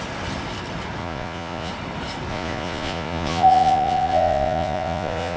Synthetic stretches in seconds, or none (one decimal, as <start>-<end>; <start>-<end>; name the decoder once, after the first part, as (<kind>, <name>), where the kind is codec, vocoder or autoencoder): 1.0-1.7 (vocoder, Vocos); 2.3-5.4